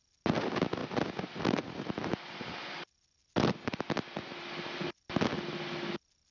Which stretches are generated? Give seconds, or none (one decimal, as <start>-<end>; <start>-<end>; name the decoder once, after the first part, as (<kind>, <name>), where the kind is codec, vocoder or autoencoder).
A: 0.8-2.2 (vocoder, BigVGAN v2)